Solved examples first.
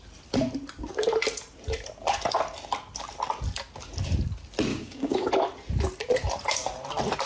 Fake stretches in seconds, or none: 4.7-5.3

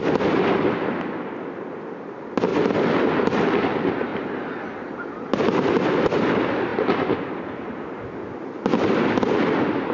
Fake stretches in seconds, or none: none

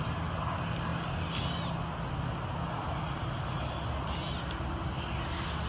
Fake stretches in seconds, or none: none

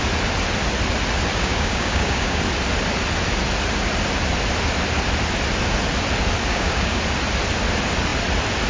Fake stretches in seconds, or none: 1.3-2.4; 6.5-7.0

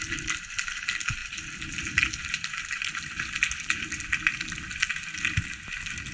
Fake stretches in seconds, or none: none